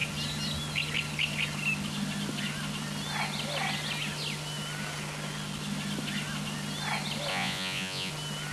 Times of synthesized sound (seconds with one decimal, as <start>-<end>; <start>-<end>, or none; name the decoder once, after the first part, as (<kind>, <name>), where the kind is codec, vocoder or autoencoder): 7.3-8.1 (vocoder, Vocos)